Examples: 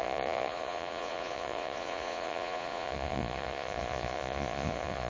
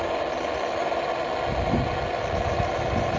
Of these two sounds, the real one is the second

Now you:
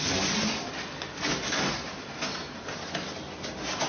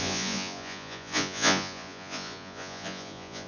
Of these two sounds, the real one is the first